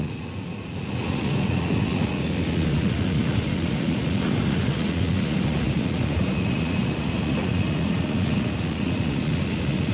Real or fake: fake